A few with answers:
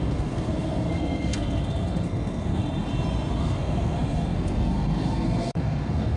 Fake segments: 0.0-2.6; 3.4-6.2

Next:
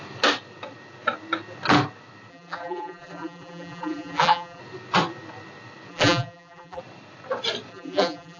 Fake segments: 2.3-4.6; 5.9-6.8; 7.7-8.4

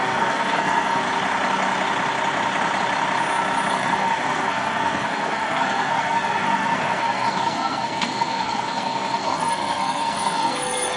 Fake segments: 0.0-1.0; 3.7-11.0